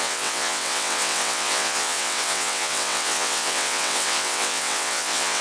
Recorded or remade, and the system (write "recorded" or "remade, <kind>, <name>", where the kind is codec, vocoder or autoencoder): remade, vocoder, WaveNeXt